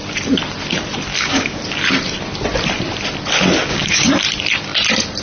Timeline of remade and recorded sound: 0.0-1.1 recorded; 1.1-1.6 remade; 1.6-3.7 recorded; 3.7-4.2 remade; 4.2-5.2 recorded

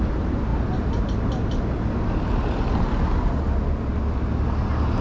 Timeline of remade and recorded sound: 0.0-5.0 recorded